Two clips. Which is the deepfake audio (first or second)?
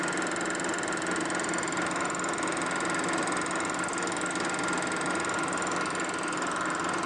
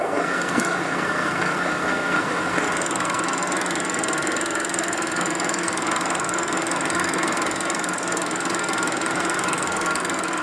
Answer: second